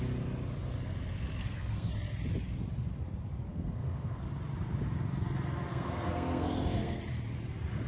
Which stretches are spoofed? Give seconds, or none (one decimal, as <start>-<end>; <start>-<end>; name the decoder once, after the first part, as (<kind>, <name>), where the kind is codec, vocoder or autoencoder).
1.4-1.9 (codec, SNAC); 3.5-4.2; 5.7-7.0

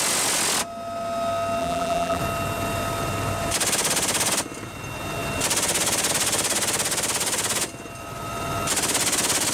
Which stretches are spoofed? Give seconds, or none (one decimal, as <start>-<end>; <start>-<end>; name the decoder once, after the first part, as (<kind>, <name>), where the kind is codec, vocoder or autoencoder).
1.6-2.2 (vocoder, BigVGAN v2)

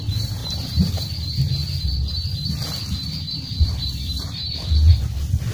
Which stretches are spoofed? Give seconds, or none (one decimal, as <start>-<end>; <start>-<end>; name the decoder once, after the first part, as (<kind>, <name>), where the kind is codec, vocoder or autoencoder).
0.4-0.9 (vocoder, BigVGAN v2)

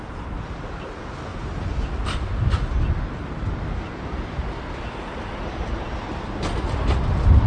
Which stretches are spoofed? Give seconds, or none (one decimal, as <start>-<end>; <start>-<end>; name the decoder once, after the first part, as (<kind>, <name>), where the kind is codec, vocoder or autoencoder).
none

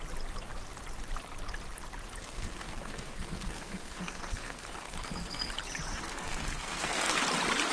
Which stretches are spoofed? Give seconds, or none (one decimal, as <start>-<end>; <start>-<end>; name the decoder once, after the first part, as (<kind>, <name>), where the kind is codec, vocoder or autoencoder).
2.2-5.5 (codec, SNAC); 5.9-7.2